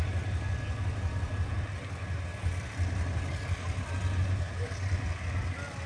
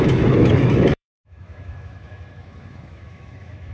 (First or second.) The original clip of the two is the first